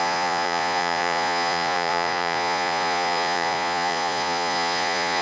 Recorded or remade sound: remade